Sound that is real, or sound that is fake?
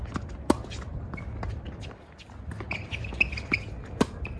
real